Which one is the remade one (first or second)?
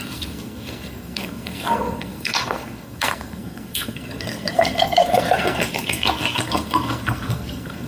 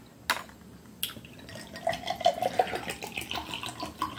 first